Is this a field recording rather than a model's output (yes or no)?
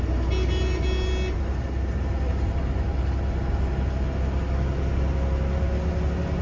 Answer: yes